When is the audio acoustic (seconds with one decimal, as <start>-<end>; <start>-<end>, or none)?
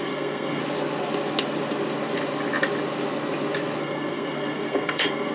0.6-3.8